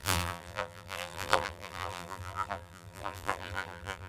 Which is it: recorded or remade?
remade